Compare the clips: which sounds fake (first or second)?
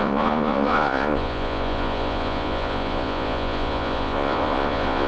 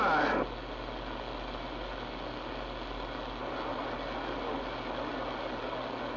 first